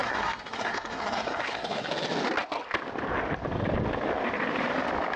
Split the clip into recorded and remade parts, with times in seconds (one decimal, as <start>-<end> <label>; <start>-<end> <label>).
0.0-1.9 remade; 1.9-5.2 recorded